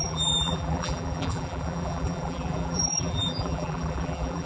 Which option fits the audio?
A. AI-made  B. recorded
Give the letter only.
A